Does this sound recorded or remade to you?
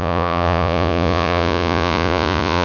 remade